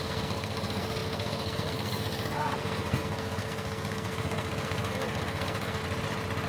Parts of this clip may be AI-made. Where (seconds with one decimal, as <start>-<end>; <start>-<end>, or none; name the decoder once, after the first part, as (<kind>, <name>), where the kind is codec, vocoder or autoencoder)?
0.0-5.8 (codec, SNAC)